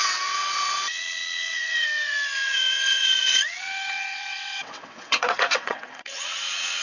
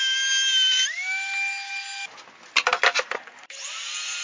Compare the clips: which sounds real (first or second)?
second